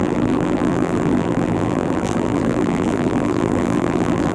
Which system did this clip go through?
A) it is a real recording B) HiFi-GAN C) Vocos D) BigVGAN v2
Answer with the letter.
D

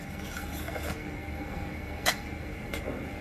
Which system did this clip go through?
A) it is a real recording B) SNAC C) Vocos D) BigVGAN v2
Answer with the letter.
B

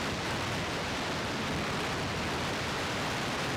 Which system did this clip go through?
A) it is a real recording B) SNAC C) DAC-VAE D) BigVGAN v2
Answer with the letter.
A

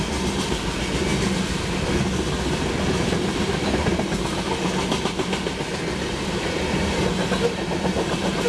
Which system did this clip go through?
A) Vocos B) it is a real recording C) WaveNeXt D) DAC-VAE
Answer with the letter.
B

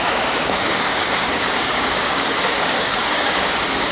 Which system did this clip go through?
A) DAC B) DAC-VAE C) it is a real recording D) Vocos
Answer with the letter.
A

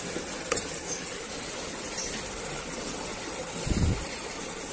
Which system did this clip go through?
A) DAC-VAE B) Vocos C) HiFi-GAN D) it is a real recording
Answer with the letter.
D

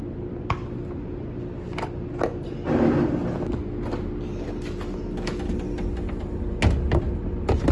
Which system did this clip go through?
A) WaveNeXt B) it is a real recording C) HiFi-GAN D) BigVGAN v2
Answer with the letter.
B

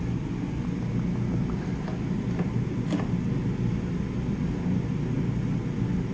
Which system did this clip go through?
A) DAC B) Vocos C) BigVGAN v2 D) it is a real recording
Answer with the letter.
D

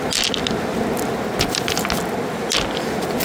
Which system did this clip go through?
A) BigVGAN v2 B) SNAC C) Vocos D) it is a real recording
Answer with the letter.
D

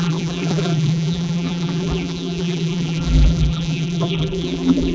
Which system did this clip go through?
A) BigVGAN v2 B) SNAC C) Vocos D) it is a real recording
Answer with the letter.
A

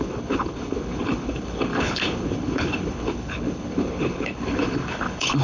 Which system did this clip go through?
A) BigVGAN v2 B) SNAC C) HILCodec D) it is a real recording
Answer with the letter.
C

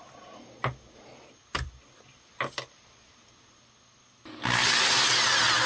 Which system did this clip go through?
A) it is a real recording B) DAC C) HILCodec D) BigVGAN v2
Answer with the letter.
A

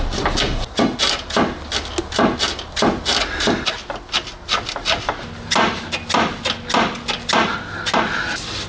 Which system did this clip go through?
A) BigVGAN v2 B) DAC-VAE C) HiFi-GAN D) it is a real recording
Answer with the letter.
D